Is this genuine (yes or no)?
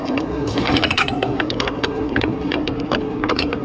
no